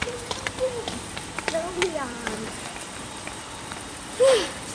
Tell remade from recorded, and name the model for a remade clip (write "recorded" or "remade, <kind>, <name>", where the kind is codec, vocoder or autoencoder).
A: remade, vocoder, BigVGAN v2